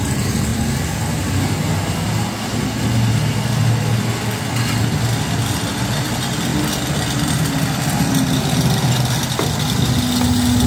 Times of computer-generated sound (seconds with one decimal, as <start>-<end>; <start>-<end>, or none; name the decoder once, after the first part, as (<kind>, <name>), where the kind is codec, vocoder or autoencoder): none